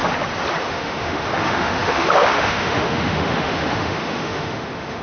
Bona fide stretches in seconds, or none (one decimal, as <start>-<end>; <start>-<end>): 0.0-0.6